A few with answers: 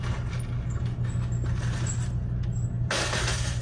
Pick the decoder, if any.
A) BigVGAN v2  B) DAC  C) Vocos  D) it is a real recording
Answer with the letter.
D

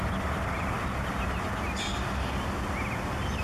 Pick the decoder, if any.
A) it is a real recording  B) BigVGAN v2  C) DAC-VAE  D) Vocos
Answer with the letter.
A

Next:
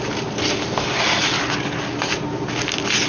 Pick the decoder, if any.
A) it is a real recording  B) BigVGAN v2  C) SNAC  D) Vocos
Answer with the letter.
A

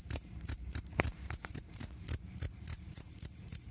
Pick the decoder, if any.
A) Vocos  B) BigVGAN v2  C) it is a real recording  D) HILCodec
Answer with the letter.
B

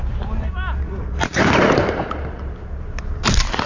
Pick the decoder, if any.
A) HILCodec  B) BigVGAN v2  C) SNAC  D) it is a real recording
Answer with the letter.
D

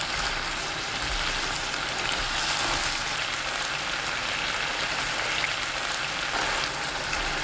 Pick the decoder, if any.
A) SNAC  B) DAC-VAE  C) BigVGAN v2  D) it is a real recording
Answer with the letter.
D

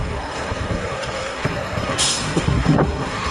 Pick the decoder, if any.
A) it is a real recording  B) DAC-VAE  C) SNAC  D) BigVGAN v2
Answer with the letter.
C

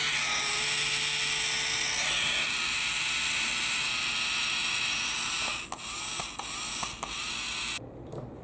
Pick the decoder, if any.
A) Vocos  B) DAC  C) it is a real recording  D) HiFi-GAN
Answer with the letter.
C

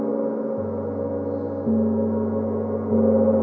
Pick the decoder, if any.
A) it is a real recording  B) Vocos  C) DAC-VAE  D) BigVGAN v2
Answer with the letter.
A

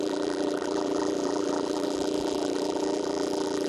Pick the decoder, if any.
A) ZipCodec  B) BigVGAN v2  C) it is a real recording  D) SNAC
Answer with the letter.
B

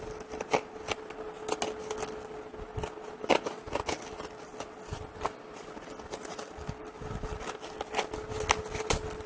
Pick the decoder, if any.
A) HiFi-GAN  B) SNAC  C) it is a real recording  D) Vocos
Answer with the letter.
C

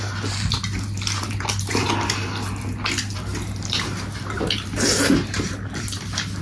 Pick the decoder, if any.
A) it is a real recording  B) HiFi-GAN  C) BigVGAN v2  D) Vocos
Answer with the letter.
A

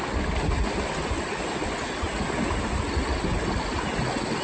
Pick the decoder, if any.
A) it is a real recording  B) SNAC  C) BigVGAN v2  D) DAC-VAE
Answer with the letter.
A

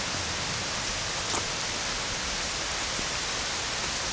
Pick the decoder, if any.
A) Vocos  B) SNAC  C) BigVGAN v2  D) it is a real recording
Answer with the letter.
D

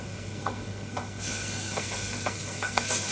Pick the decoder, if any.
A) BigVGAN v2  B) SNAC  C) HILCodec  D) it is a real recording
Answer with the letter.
B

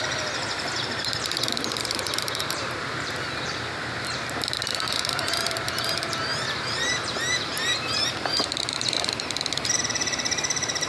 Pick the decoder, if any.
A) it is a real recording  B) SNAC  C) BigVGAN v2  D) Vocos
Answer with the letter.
C